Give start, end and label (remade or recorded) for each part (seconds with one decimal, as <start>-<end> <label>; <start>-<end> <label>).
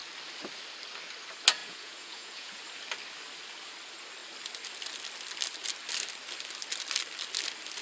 0.0-1.6 recorded; 1.6-2.6 remade; 2.6-7.8 recorded